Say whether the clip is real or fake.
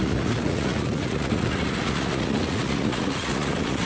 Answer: fake